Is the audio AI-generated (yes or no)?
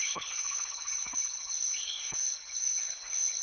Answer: yes